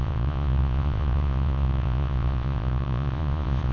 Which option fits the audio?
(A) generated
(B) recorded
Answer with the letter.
A